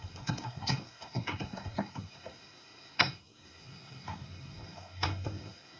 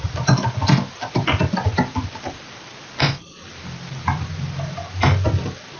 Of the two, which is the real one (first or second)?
second